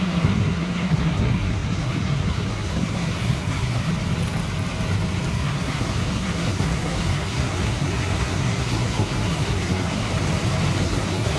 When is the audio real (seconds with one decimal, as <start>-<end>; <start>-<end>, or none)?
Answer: 3.9-5.3; 10.1-10.8